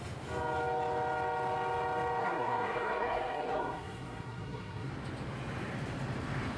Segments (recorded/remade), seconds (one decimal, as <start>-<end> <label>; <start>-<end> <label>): 0.0-2.2 recorded; 2.2-4.9 remade; 4.9-6.6 recorded

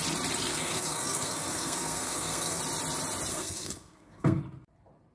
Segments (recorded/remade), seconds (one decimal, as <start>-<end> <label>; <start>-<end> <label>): 0.0-0.5 recorded; 0.5-2.6 remade; 2.6-3.3 recorded; 3.3-4.4 remade; 4.4-5.1 recorded

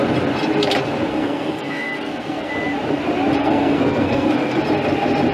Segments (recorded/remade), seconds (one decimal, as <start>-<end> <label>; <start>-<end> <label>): 0.0-1.1 recorded; 1.1-2.5 remade; 2.5-3.4 recorded; 3.4-4.6 remade; 4.6-5.3 recorded

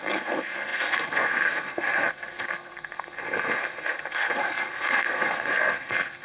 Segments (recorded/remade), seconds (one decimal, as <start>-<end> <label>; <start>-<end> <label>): 0.0-6.2 remade